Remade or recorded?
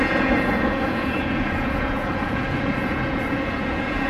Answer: remade